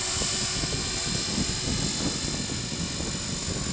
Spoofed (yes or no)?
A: no